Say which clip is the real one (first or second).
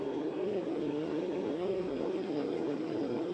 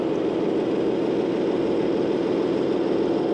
second